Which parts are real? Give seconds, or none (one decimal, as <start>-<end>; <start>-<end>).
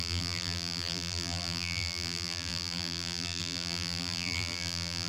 none